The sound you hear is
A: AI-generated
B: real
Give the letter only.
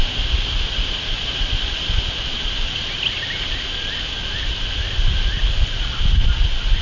B